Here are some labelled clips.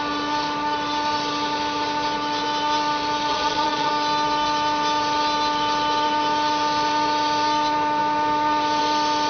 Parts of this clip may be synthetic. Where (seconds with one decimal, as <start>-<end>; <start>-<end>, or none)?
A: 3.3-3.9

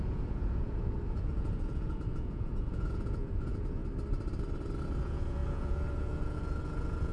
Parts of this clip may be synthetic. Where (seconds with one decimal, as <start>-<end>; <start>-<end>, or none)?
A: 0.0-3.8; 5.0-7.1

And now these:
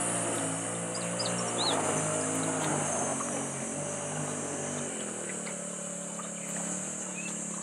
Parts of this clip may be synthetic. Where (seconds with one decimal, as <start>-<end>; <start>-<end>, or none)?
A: none

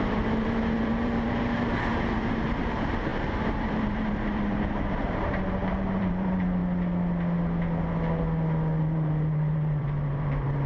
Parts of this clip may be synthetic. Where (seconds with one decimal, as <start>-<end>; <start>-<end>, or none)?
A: 0.0-6.6; 8.8-10.7